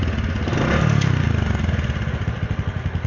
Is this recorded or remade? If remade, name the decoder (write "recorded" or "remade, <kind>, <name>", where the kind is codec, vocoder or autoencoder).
recorded